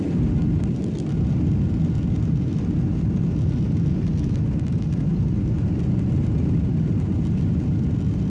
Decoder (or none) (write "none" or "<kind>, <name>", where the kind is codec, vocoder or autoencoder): none